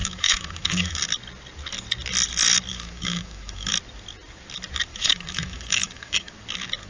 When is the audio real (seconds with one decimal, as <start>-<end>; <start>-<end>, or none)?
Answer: 1.1-2.7; 3.7-4.9; 6.3-6.9